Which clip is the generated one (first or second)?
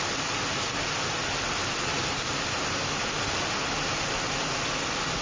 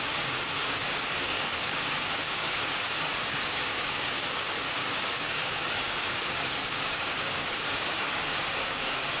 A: second